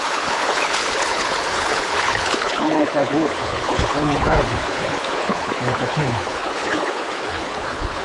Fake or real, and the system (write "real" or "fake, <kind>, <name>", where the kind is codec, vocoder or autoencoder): fake, codec, HILCodec